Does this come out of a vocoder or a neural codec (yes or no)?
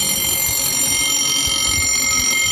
no